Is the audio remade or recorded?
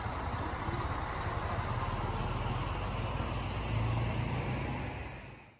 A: recorded